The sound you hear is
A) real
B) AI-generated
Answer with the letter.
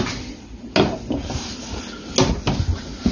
A